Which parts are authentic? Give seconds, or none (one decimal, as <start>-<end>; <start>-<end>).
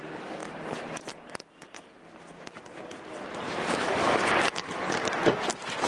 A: 0.0-5.9